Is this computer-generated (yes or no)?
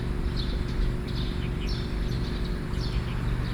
no